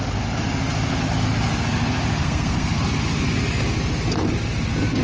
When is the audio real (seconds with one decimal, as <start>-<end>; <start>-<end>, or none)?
0.0-2.2; 2.8-5.0